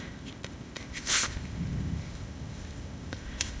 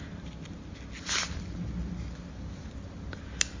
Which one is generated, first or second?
first